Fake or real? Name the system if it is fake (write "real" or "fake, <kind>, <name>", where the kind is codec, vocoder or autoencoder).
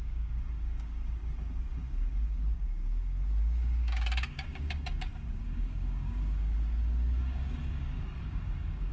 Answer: fake, codec, DAC